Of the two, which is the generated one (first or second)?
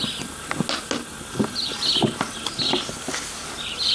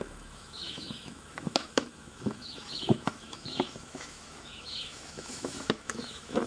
second